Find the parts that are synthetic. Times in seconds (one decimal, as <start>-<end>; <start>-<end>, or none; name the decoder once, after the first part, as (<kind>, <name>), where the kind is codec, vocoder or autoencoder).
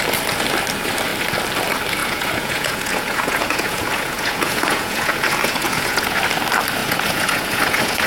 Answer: 2.0-6.2 (vocoder, Vocos); 6.8-8.1